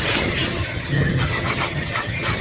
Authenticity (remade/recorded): remade